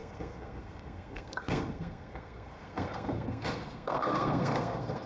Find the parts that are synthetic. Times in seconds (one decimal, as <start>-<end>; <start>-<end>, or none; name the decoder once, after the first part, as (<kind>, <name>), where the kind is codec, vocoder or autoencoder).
0.0-5.1 (codec, SNAC)